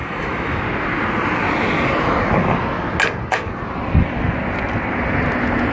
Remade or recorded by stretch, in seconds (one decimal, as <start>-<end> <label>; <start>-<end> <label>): 0.0-0.6 remade; 0.6-5.7 recorded